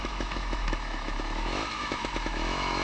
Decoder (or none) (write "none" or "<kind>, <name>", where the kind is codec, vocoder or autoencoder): autoencoder, DAC-VAE